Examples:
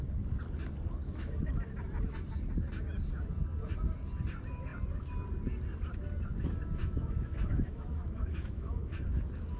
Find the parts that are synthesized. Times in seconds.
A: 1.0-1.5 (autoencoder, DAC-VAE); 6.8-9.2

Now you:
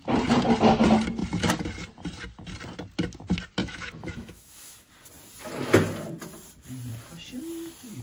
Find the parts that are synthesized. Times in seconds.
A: 3.6-4.9 (autoencoder, DAC-VAE)

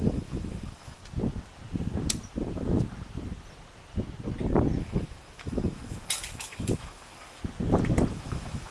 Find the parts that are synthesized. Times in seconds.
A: 0.0-1.0 (autoencoder, DAC-VAE); 4.8-7.4; 8.1-8.7

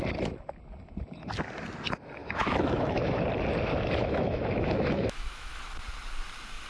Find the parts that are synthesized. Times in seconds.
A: 2.2-3.2 (autoencoder, DAC-VAE); 4.0-5.8

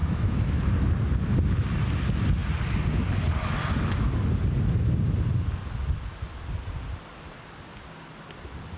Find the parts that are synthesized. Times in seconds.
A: 0.0-0.7 (autoencoder, DAC-VAE)